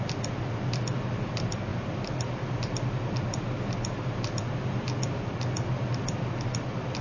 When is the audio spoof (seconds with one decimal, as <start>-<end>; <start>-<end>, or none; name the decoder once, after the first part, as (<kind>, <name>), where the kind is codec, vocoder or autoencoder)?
none